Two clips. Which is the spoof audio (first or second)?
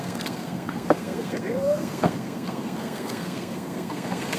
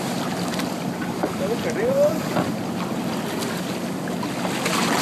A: first